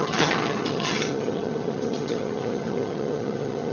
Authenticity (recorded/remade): remade